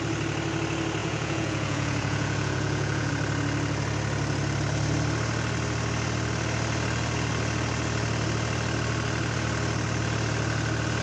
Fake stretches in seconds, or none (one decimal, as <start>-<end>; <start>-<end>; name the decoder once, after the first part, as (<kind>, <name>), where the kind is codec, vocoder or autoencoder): 1.0-3.1 (vocoder, Vocos)